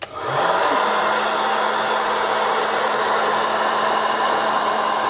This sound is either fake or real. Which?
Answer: real